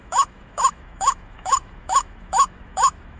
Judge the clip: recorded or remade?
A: remade